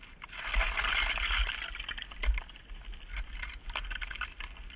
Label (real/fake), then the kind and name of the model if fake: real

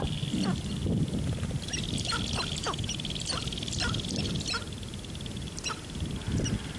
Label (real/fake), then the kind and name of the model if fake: real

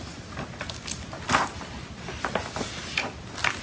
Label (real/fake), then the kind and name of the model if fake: real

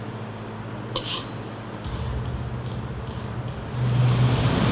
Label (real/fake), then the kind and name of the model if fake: real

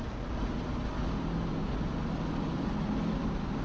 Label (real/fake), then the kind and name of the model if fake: real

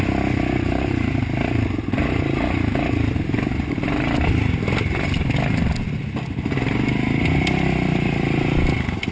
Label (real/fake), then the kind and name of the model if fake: real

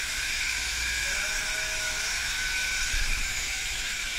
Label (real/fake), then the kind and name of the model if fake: fake, autoencoder, DAC-VAE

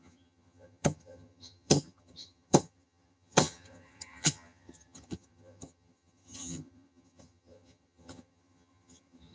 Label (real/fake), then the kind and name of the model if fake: fake, vocoder, HiFi-GAN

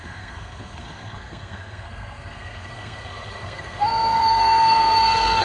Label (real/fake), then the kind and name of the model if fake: fake, codec, SNAC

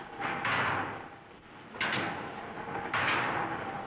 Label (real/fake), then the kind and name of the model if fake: real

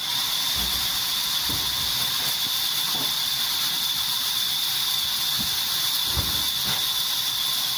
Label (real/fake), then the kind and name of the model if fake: fake, vocoder, BigVGAN v2